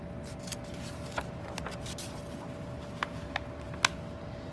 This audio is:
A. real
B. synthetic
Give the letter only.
A